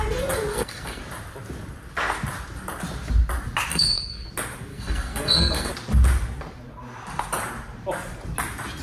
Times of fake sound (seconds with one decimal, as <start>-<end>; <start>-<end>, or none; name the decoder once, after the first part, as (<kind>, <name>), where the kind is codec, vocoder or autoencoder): 0.5-1.0 (codec, SNAC); 3.7-4.3; 4.7-5.7